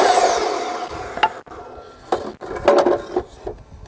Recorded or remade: recorded